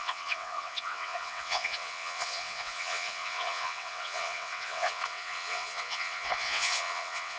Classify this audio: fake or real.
fake